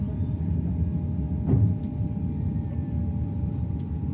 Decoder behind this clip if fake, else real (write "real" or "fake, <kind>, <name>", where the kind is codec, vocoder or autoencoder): real